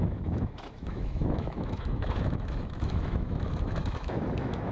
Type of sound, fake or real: fake